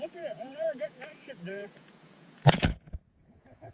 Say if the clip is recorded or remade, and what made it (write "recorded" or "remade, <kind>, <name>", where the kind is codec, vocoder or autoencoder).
remade, vocoder, Vocos